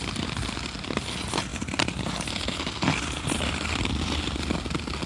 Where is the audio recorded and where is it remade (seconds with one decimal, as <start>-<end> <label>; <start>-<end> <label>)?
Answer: 0.0-5.1 recorded